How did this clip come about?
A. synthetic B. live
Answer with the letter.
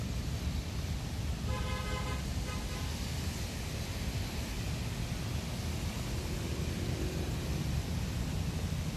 B